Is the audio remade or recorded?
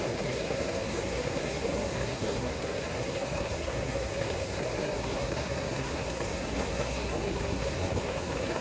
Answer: remade